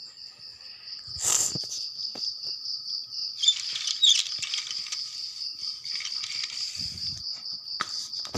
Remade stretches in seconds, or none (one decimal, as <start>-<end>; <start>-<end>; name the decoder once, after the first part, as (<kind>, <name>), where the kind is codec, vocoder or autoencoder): none